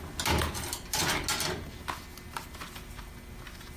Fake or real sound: real